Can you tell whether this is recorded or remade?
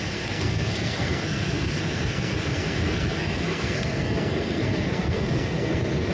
remade